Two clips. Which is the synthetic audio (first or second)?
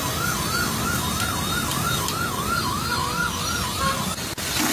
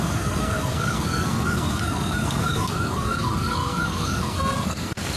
second